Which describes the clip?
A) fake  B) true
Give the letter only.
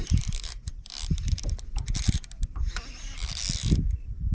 B